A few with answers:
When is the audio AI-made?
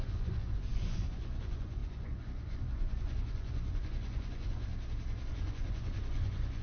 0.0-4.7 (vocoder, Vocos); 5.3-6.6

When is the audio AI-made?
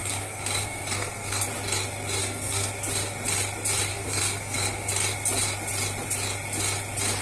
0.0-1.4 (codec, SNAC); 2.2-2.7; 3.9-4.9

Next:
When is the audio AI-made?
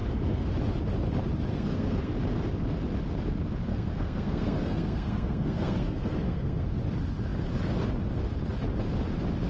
0.0-0.5 (codec, SNAC); 1.5-2.1; 3.7-6.8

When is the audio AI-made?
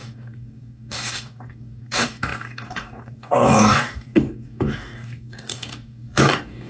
0.0-6.7 (codec, DAC)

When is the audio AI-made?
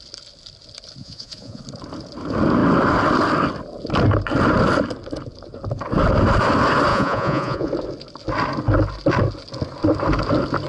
1.0-1.6 (vocoder, Vocos); 6.9-7.7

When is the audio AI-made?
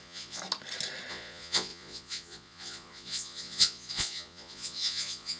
0.0-0.4 (vocoder, Vocos); 1.1-5.4